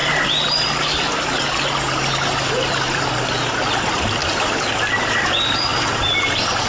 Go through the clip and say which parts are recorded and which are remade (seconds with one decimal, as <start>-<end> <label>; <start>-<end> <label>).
0.0-6.7 recorded